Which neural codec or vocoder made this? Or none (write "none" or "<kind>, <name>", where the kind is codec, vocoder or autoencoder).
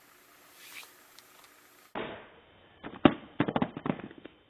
none